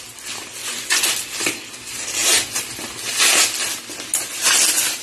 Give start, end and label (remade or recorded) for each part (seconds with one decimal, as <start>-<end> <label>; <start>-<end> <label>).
0.0-0.6 recorded; 0.6-1.1 remade; 1.1-5.0 recorded

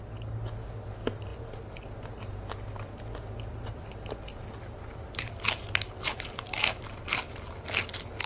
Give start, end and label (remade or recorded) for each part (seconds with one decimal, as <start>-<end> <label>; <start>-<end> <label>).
0.0-8.3 recorded

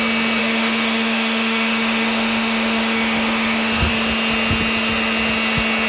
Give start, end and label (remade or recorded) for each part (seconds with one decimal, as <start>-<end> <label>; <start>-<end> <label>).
0.0-0.4 recorded; 0.4-3.9 remade; 3.9-5.9 recorded

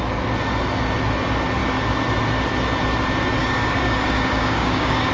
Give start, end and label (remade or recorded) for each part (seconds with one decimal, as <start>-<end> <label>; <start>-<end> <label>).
0.0-3.4 recorded; 3.4-5.1 remade

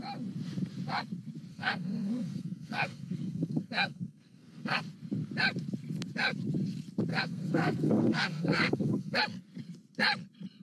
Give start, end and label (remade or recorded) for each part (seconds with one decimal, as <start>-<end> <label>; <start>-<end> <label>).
0.0-1.5 recorded; 1.5-4.8 remade; 4.8-7.1 recorded; 7.1-9.2 remade; 9.2-10.6 recorded

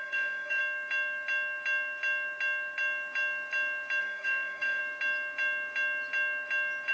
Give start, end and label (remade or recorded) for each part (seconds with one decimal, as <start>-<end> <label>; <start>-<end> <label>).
0.0-0.6 remade; 0.6-4.0 recorded; 4.0-4.8 remade; 4.8-6.9 recorded